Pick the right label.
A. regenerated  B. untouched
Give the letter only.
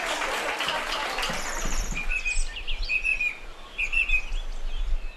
B